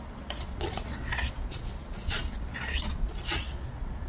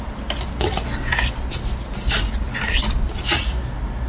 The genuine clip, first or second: second